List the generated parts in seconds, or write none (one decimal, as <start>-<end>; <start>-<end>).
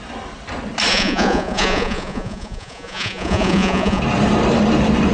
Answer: 0.9-4.0